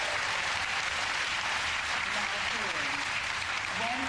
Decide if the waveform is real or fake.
fake